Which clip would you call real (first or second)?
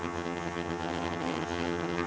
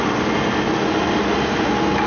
second